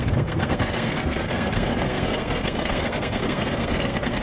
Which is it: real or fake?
fake